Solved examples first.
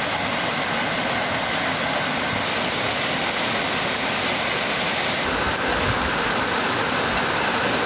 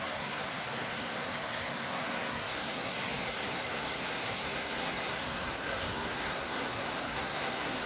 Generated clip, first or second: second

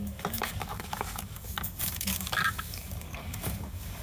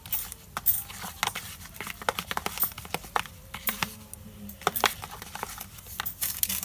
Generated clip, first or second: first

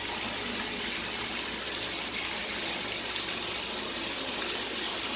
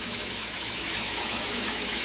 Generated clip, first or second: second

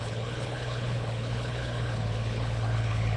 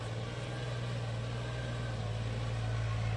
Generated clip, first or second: first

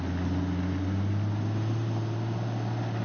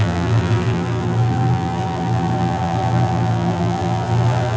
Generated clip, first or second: second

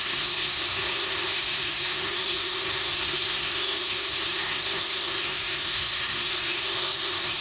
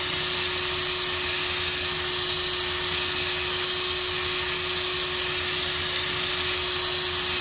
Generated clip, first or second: first